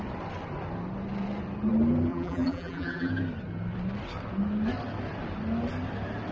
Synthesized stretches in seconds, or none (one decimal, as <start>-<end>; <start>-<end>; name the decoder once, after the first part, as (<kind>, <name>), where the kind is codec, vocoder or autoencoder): 2.1-3.1 (vocoder, BigVGAN v2)